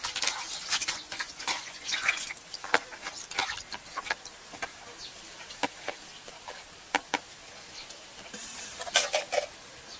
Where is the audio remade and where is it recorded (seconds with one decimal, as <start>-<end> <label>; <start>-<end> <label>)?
0.0-0.8 recorded; 0.8-2.3 remade; 2.3-10.0 recorded